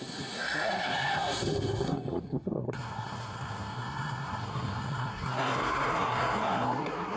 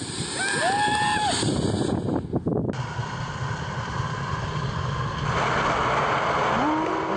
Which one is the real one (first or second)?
second